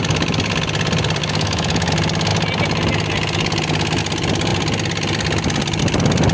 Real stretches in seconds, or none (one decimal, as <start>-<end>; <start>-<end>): 0.0-1.2; 1.9-6.3